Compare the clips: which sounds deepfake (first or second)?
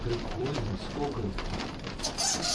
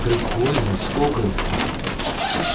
first